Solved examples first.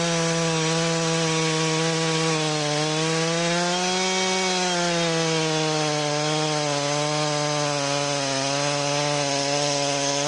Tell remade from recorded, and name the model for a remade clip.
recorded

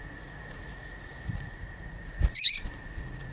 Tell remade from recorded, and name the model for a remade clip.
remade, vocoder, Vocos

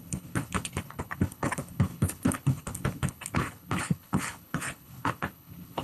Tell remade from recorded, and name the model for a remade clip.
remade, codec, HILCodec